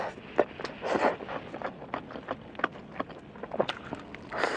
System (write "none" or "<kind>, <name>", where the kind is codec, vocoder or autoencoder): none